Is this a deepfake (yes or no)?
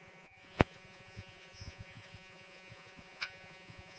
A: yes